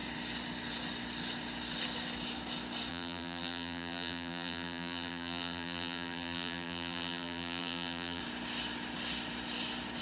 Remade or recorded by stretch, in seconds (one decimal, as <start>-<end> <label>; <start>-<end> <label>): 0.0-2.9 recorded; 2.9-8.2 remade; 8.2-10.0 recorded